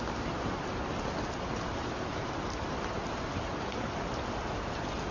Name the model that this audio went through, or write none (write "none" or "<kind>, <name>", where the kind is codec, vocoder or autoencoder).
none